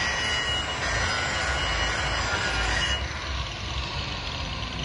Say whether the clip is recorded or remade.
recorded